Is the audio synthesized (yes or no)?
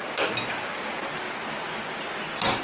no